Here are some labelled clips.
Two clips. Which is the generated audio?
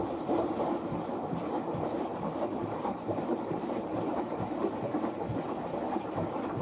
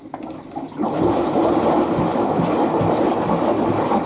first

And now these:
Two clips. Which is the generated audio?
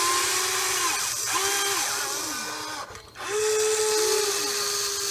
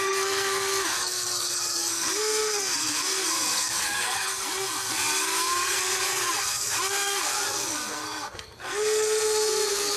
second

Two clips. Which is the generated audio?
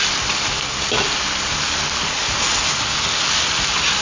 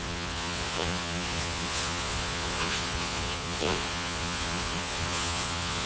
second